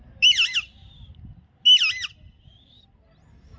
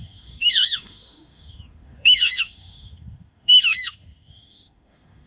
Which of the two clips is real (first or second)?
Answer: first